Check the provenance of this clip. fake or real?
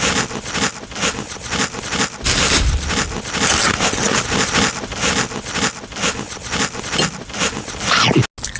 real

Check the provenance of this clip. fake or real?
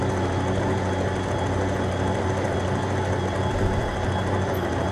real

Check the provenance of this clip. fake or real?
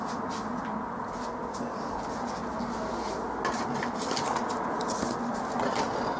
real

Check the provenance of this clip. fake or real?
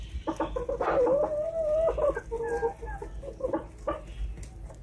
real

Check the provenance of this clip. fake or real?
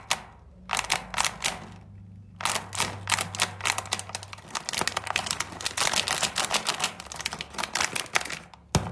real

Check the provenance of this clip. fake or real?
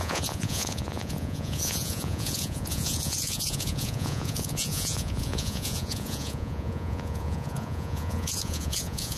fake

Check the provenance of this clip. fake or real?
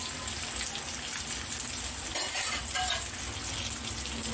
real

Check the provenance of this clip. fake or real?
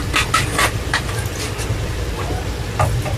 real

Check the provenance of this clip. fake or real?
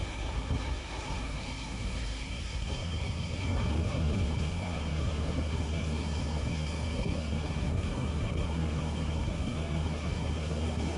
fake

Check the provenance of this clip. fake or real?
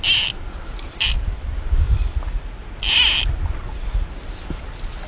real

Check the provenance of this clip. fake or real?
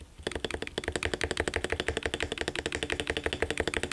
real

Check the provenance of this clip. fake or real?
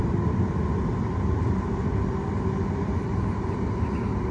real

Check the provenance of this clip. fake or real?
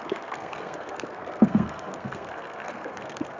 fake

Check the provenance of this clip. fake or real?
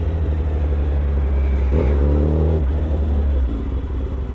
real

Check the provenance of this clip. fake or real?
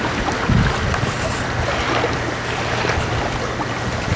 real